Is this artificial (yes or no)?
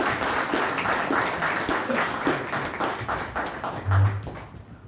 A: no